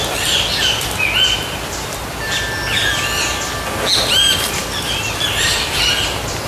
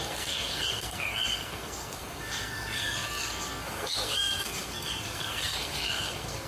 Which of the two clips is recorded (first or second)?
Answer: first